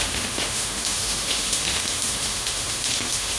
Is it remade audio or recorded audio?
remade